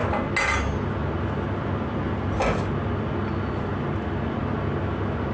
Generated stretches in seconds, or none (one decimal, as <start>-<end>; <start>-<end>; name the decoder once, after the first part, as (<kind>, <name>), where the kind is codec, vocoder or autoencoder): none

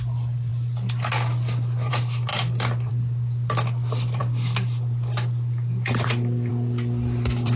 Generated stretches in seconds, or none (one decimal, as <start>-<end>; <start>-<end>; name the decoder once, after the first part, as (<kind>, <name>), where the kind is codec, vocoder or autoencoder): none

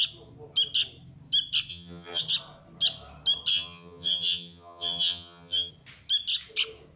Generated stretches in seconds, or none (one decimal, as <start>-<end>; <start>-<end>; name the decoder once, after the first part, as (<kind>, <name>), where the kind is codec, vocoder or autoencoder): 1.7-2.2 (vocoder, HiFi-GAN); 3.5-5.7

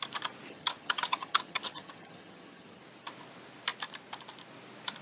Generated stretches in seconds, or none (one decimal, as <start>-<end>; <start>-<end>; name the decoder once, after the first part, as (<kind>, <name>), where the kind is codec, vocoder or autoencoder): 0.5-2.8 (vocoder, HiFi-GAN)

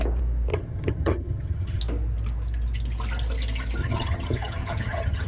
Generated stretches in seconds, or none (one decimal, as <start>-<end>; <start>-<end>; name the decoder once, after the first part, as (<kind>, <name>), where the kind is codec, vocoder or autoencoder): 0.5-1.8 (vocoder, HiFi-GAN); 3.8-5.3